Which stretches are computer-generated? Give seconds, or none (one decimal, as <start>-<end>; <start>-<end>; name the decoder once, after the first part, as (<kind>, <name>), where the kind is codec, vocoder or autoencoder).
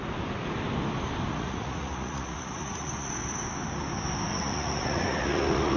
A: 1.3-3.1 (vocoder, Vocos); 4.3-5.8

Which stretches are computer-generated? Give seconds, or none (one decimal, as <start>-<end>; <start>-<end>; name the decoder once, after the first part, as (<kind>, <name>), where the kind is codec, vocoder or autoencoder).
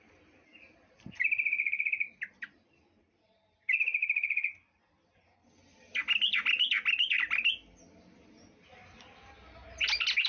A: none